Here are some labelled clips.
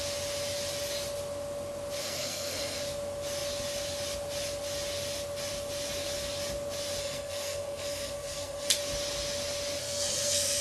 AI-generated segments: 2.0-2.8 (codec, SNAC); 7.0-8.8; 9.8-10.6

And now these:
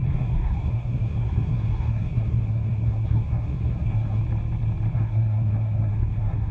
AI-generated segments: 0.0-4.2 (codec, SNAC); 4.9-6.5

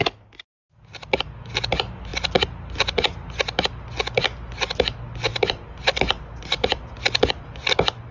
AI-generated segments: none

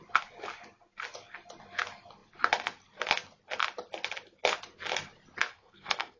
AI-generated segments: 5.5-6.2 (codec, SNAC)

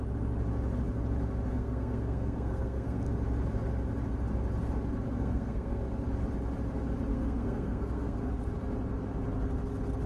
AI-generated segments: 1.5-3.0 (codec, SNAC); 5.1-5.8; 7.1-8.3

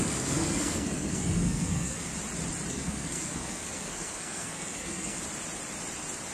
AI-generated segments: 0.0-2.1 (codec, SNAC); 2.7-5.2